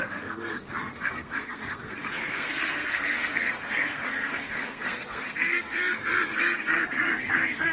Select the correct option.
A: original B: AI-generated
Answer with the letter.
B